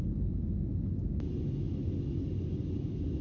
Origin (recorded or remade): recorded